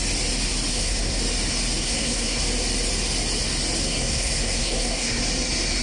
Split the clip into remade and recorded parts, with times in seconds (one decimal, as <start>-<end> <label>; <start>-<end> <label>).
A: 0.0-0.7 recorded; 0.7-1.2 remade; 1.2-1.8 recorded; 1.8-2.4 remade; 2.4-3.8 recorded; 3.8-5.2 remade; 5.2-5.8 recorded

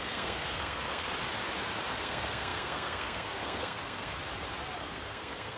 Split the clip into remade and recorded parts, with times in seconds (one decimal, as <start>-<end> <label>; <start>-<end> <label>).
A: 0.0-1.1 remade; 1.1-2.0 recorded; 2.0-4.2 remade; 4.2-4.8 recorded; 4.8-5.6 remade

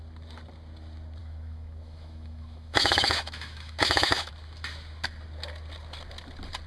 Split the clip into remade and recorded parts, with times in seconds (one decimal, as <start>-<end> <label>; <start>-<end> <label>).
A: 0.0-1.2 recorded; 1.2-4.3 remade; 4.3-6.7 recorded

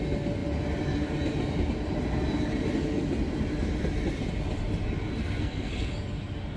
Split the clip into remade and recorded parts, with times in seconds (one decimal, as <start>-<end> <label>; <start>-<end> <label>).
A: 0.0-5.2 recorded; 5.2-5.9 remade; 5.9-6.6 recorded

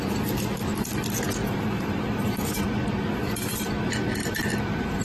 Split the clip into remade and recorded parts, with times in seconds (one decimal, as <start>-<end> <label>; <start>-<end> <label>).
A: 0.0-1.4 recorded; 1.4-2.7 remade; 2.7-4.2 recorded; 4.2-5.0 remade

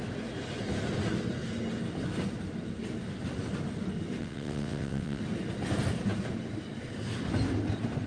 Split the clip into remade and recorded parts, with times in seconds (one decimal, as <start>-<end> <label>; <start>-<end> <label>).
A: 0.0-4.2 recorded; 4.2-5.2 remade; 5.2-8.1 recorded